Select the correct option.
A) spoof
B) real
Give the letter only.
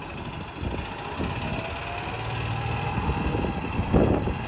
B